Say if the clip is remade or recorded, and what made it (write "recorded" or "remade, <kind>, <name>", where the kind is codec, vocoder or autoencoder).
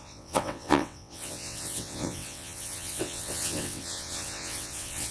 remade, vocoder, WaveNeXt